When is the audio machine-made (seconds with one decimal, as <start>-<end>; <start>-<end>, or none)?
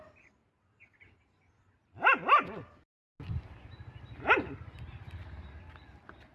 none